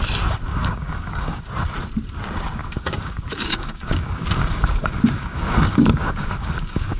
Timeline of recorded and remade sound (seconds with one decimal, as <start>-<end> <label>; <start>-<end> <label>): 0.0-0.5 recorded; 0.5-1.4 remade; 1.4-2.6 recorded; 2.6-7.0 remade